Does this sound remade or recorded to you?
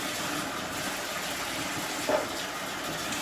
recorded